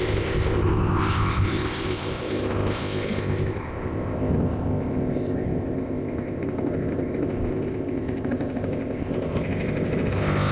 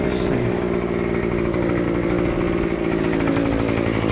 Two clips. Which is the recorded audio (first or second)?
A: second